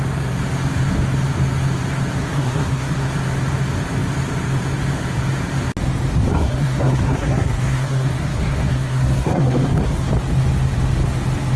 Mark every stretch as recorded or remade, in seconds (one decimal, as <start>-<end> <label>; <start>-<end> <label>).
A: 0.0-2.2 recorded; 2.2-3.1 remade; 3.1-6.3 recorded; 6.3-10.1 remade; 10.1-11.6 recorded